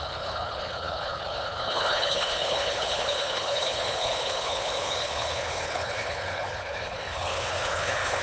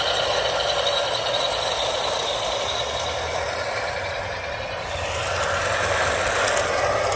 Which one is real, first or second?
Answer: second